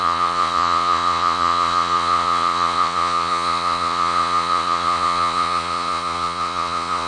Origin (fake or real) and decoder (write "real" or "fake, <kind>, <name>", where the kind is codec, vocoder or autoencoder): fake, vocoder, Vocos